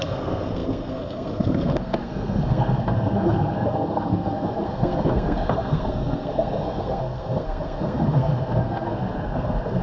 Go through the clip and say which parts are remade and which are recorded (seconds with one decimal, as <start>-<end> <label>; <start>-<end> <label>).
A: 0.0-9.8 remade

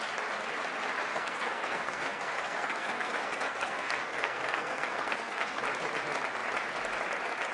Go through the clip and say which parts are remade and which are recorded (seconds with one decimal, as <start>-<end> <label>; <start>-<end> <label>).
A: 0.0-1.1 recorded; 1.1-5.6 remade; 5.6-7.5 recorded

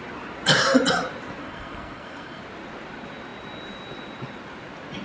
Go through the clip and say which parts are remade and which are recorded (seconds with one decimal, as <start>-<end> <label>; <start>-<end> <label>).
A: 0.0-1.4 recorded; 1.4-2.4 remade; 2.4-5.0 recorded

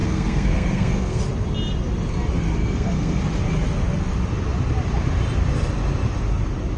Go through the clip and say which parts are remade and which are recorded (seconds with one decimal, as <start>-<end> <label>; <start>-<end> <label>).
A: 0.0-1.2 remade; 1.2-2.6 recorded; 2.6-3.2 remade; 3.2-6.8 recorded

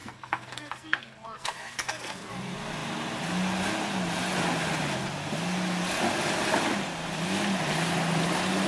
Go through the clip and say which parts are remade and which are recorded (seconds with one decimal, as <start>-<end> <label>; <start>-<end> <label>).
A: 0.0-2.3 remade; 2.3-8.7 recorded

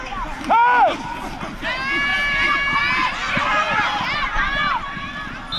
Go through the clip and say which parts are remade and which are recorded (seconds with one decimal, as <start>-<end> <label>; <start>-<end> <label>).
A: 0.0-5.6 recorded

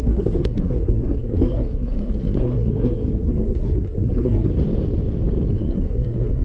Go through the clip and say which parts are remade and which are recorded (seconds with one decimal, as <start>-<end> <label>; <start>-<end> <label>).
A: 0.0-4.5 remade; 4.5-5.5 recorded; 5.5-6.4 remade

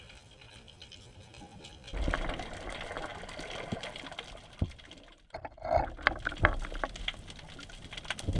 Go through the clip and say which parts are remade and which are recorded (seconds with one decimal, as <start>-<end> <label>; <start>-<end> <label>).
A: 0.0-8.4 recorded